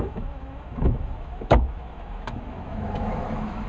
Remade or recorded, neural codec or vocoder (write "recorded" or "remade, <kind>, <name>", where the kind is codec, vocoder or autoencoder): remade, autoencoder, DAC-VAE